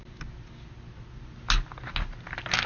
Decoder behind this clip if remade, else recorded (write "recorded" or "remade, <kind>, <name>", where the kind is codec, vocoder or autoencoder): recorded